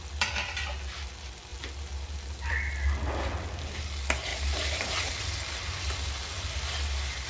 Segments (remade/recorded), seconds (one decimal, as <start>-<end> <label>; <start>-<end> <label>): 0.0-4.3 recorded; 4.3-5.2 remade; 5.2-7.3 recorded